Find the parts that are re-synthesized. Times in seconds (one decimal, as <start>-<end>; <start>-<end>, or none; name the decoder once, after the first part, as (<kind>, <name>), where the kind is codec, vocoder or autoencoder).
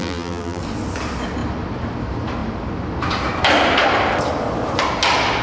0.0-0.6 (vocoder, BigVGAN v2)